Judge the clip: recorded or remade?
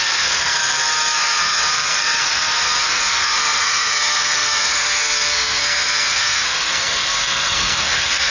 remade